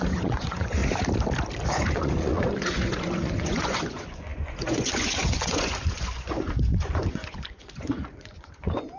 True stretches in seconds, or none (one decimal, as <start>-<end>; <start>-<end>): 0.8-1.7